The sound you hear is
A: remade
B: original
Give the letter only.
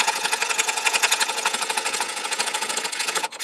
A